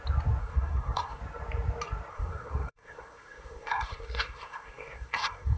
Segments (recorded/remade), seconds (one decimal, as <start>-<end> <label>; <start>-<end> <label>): 0.0-0.4 recorded; 0.4-1.2 remade; 1.2-2.1 recorded; 2.1-5.6 remade